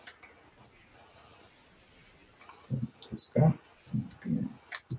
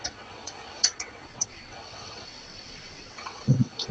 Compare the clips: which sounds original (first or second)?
first